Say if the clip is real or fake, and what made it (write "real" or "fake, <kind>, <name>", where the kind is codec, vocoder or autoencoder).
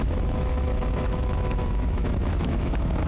fake, autoencoder, DAC-VAE